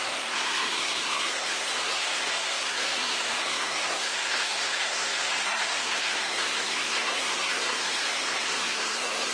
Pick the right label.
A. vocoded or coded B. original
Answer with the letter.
A